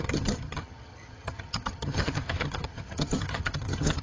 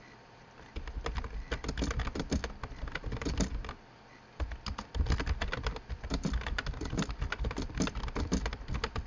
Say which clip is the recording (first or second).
second